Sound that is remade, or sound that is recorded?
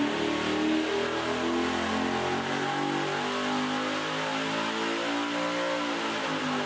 recorded